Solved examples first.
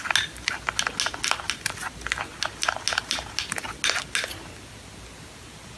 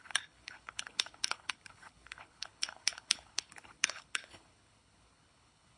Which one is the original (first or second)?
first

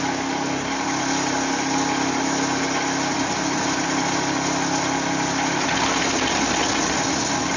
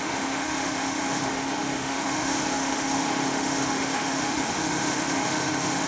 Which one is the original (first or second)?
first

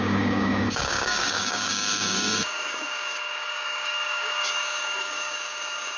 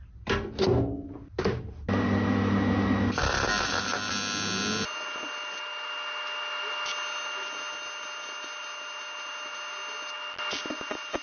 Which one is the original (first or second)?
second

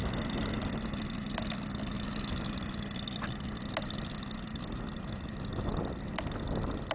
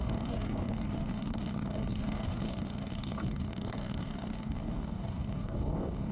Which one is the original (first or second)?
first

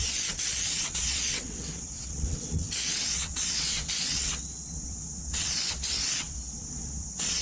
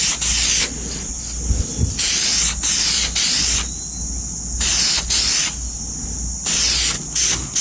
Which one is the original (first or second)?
second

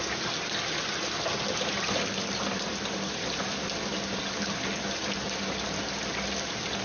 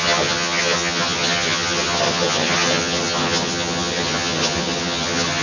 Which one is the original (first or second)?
first